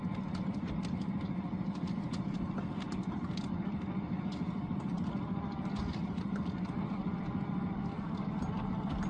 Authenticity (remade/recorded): recorded